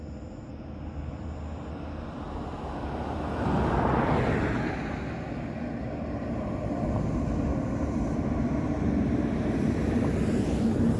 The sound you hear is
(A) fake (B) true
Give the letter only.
B